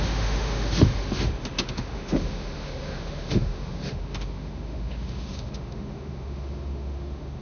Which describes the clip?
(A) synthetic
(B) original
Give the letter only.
A